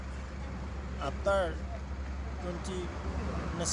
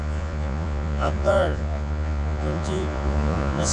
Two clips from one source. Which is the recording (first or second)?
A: first